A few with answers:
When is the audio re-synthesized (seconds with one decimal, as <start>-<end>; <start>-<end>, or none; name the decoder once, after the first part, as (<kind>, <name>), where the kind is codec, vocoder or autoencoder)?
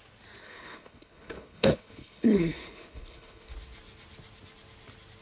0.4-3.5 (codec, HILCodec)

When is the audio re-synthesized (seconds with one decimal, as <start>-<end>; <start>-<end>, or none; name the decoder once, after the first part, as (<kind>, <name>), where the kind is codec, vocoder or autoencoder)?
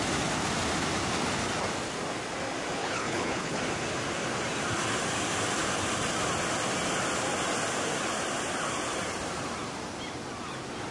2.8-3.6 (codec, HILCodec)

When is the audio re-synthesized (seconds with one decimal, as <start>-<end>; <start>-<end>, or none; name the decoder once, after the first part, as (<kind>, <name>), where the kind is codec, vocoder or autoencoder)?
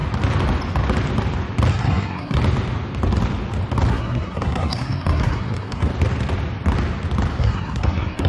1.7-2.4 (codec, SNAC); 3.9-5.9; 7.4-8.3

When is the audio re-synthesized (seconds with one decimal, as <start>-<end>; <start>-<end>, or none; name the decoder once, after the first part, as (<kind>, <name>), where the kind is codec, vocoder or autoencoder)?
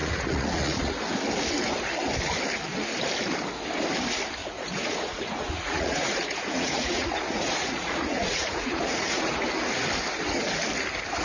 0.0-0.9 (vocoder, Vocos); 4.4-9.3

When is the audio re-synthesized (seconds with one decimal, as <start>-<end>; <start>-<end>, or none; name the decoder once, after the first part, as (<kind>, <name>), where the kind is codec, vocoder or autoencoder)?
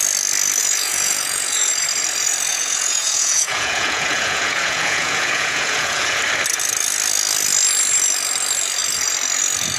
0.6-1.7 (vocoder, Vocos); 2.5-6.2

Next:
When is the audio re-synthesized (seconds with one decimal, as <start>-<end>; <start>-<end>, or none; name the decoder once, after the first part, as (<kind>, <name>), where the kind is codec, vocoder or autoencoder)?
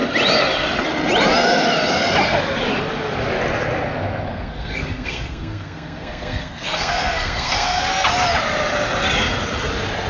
4.3-7.8 (codec, SNAC)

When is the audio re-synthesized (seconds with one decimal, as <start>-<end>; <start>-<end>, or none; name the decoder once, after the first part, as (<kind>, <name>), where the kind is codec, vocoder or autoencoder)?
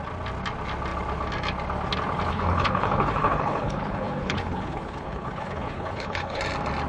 2.3-6.4 (codec, HILCodec)